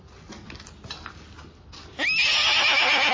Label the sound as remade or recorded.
recorded